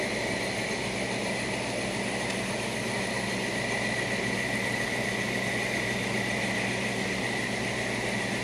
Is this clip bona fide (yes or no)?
yes